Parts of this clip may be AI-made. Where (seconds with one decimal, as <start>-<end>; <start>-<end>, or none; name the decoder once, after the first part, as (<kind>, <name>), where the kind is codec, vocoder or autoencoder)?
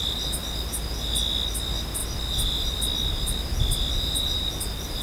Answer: none